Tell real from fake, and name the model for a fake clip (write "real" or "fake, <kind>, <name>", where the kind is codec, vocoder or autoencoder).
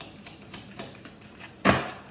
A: fake, vocoder, BigVGAN v2